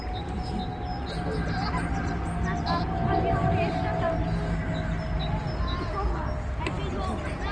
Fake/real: real